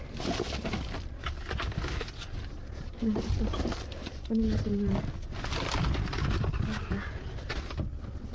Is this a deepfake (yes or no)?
no